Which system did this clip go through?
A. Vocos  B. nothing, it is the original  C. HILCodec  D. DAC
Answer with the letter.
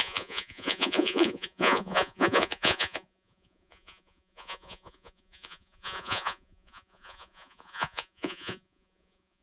A